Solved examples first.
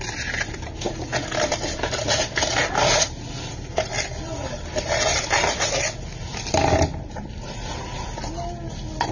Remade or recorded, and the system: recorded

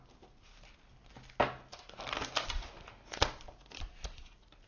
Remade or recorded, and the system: recorded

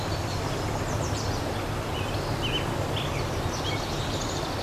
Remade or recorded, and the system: recorded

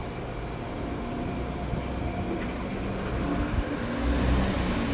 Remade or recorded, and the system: recorded